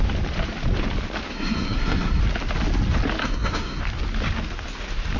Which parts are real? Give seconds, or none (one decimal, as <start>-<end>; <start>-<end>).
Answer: 0.0-1.3; 2.2-3.2; 3.8-5.2